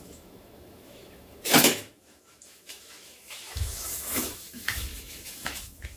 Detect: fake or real fake